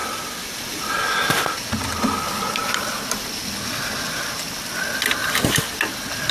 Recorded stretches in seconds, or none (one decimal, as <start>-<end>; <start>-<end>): 0.0-6.3